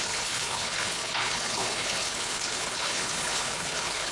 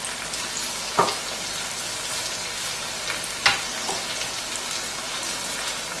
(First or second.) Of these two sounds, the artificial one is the first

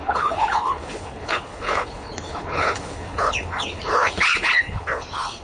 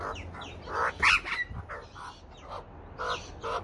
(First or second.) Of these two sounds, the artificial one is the first